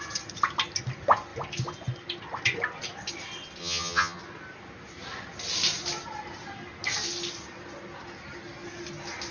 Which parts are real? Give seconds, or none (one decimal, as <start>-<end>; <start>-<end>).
0.0-3.6; 4.2-9.3